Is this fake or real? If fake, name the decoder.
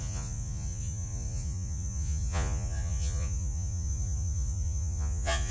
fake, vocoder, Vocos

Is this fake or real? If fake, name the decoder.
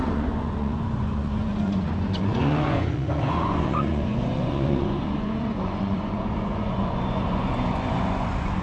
fake, vocoder, Vocos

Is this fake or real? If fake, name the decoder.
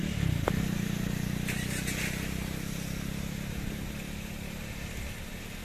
real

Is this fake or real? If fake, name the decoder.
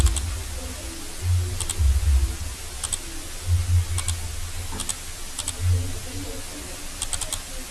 real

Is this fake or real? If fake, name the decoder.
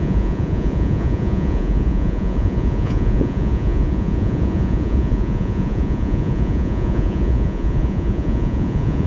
fake, vocoder, Vocos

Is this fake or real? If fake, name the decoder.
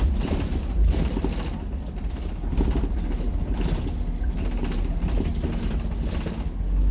real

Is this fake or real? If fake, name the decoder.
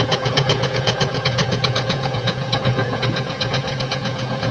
fake, vocoder, Vocos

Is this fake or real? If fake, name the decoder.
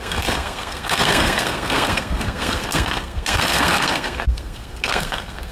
fake, codec, SNAC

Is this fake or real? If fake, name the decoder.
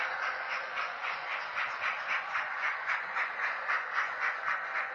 fake, vocoder, Vocos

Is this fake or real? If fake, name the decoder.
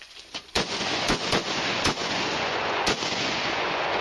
fake, vocoder, Vocos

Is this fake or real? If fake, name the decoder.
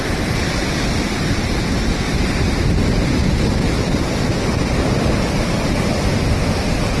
real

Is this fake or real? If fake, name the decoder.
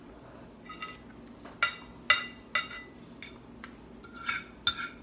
real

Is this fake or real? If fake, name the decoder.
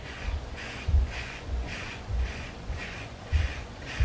fake, vocoder, Vocos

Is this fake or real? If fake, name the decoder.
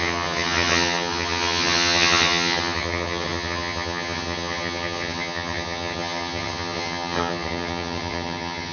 fake, vocoder, HiFi-GAN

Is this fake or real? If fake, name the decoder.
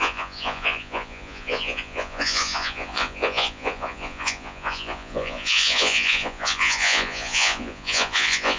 fake, vocoder, Vocos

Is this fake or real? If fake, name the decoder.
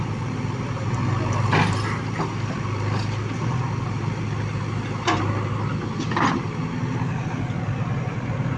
real